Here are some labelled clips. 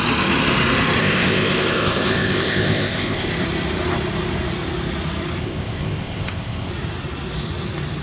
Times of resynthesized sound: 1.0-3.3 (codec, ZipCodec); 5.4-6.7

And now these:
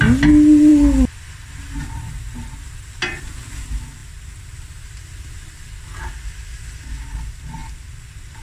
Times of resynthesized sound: none

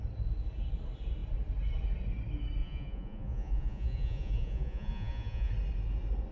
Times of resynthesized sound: 2.6-5.5 (vocoder, Vocos)